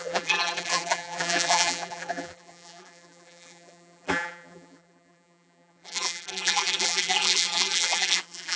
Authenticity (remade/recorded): remade